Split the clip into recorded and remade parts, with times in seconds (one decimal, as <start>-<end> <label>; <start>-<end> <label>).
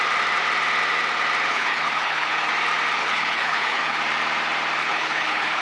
0.0-1.5 recorded; 1.5-2.5 remade; 2.5-3.0 recorded; 3.0-4.0 remade; 4.0-4.8 recorded; 4.8-5.6 remade